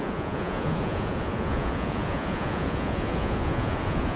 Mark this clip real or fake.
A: fake